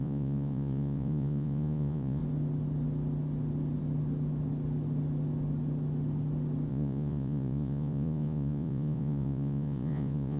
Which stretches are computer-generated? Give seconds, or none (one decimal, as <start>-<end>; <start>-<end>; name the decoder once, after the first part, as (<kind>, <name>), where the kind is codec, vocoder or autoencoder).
0.0-2.2 (vocoder, Vocos); 6.7-10.4